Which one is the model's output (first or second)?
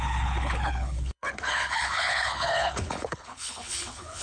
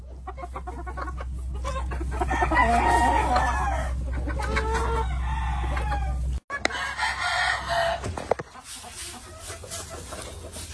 first